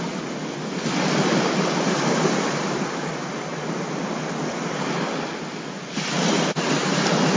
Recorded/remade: recorded